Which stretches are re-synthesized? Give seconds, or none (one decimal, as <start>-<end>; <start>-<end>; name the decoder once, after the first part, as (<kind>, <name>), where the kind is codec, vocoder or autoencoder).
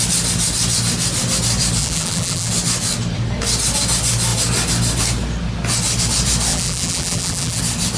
1.8-2.5 (vocoder, BigVGAN v2); 6.5-7.6